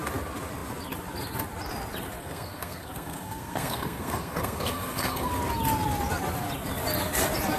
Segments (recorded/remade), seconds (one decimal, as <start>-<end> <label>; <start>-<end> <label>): 0.0-2.2 recorded; 2.2-5.3 remade; 5.3-7.6 recorded